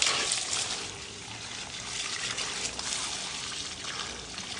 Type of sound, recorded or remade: recorded